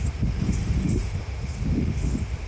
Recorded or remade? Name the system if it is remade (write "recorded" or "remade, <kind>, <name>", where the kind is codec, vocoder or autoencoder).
remade, autoencoder, DAC-VAE